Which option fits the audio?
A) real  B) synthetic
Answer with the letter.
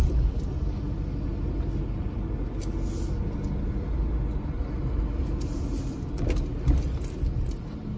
A